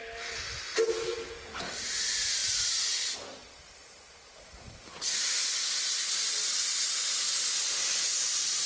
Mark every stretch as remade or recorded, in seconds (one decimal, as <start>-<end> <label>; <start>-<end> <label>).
0.0-2.4 recorded; 2.4-5.0 remade; 5.0-8.7 recorded